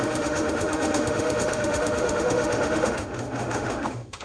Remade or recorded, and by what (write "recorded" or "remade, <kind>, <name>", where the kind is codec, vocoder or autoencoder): remade, autoencoder, DAC-VAE